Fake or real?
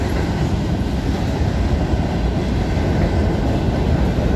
real